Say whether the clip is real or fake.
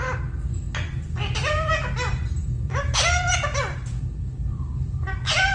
real